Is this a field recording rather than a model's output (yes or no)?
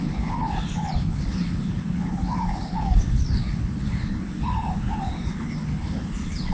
no